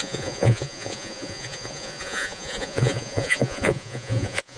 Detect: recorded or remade remade